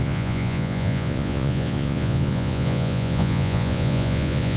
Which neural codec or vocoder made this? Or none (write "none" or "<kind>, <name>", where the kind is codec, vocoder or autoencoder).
vocoder, Vocos